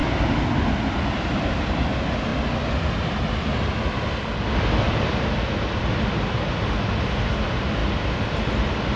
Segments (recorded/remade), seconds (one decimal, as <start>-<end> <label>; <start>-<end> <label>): 0.0-9.0 recorded